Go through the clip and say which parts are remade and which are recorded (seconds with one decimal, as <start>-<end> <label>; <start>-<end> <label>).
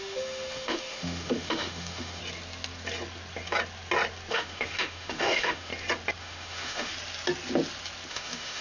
0.0-2.2 remade; 2.2-4.3 recorded; 4.3-5.7 remade; 5.7-6.2 recorded; 6.2-6.9 remade; 6.9-8.1 recorded; 8.1-8.6 remade